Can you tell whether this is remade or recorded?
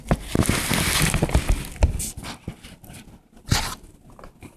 recorded